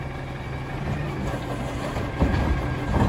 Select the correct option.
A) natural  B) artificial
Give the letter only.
A